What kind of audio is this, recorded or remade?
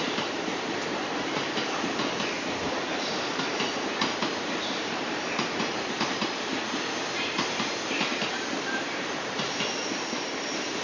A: remade